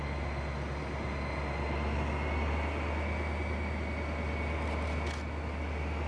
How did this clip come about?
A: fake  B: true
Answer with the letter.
B